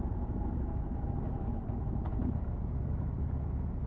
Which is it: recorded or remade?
remade